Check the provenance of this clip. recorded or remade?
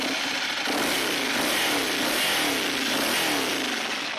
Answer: recorded